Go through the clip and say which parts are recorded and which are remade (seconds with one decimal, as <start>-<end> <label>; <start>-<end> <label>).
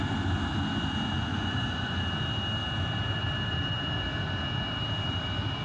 0.0-1.3 recorded; 1.3-2.0 remade; 2.0-5.6 recorded